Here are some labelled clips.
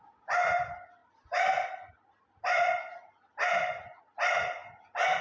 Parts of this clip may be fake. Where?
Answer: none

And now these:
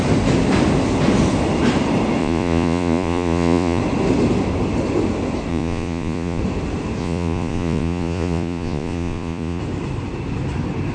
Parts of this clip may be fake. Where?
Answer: 2.2-3.8 (vocoder, Vocos); 5.5-6.4; 7.0-9.6

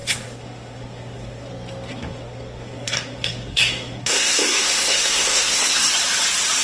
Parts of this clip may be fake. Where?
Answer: 0.0-1.5 (codec, SNAC); 1.9-5.9

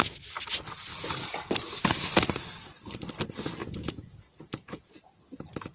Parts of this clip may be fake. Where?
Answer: 3.6-4.9 (vocoder, Vocos)

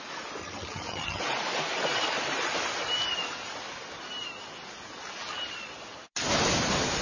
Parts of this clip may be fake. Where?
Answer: 0.4-1.2 (vocoder, HiFi-GAN)

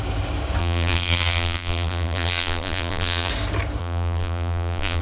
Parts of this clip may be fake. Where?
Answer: 0.6-3.3 (vocoder, BigVGAN v2); 3.8-5.0